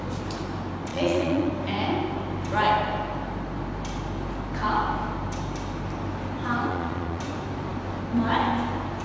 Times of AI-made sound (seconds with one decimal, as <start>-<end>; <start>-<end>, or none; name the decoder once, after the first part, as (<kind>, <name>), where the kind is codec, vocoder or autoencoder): 0.9-1.5 (vocoder, Vocos); 6.7-7.2